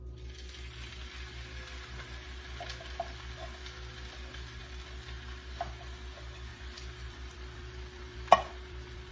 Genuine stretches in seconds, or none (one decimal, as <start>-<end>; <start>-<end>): 0.0-6.5